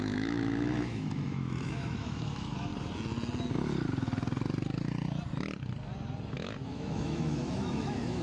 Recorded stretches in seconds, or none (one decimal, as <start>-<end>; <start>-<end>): 2.7-6.3